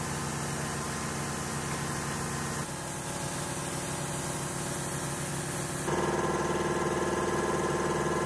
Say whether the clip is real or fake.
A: real